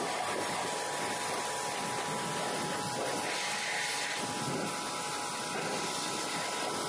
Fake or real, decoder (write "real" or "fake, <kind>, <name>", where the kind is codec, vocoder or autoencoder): fake, vocoder, BigVGAN v2